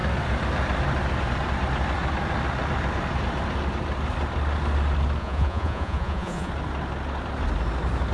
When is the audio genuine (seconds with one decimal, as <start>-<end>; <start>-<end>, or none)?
0.0-5.2; 6.5-8.1